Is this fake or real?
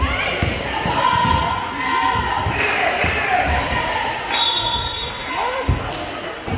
real